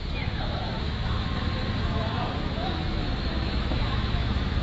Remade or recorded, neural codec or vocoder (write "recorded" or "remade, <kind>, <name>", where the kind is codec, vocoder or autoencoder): remade, autoencoder, DAC-VAE